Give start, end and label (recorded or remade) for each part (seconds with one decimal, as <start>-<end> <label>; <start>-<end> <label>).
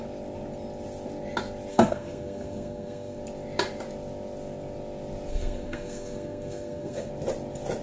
0.0-1.7 recorded; 1.7-3.2 remade; 3.2-5.3 recorded; 5.3-7.1 remade; 7.1-7.8 recorded